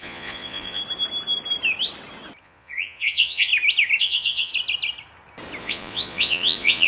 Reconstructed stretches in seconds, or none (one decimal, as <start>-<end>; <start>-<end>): 0.0-0.8; 2.4-3.5; 4.0-4.5; 5.6-6.9